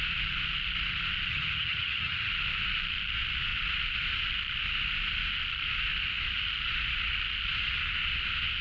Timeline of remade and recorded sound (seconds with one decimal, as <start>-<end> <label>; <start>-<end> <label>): 0.0-1.3 recorded; 1.3-2.3 remade; 2.3-8.6 recorded